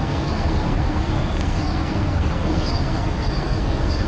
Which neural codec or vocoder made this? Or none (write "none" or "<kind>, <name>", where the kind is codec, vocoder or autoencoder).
codec, SNAC